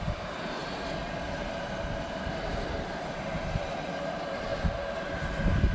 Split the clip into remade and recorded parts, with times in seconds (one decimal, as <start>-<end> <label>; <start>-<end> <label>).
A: 0.0-0.6 remade; 0.6-2.9 recorded; 2.9-4.5 remade; 4.5-5.1 recorded; 5.1-5.7 remade